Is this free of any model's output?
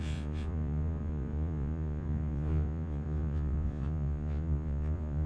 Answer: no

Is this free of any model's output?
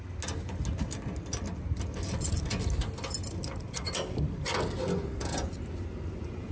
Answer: yes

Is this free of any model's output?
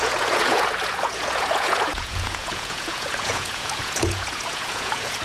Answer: no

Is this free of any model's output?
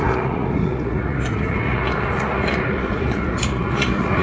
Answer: no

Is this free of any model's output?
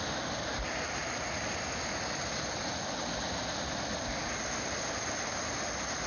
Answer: yes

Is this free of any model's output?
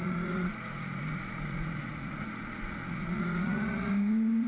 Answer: no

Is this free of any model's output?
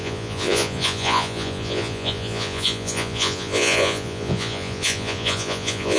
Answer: no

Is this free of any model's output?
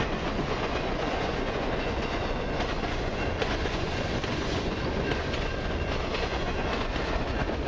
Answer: no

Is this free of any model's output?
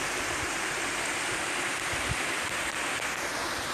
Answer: yes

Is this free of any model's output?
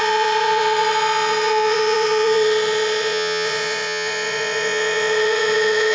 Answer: no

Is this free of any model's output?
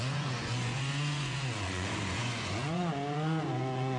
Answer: no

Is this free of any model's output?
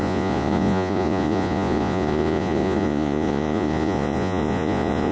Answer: no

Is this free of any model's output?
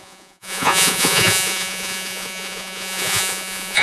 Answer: no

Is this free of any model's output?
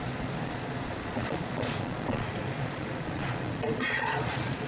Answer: no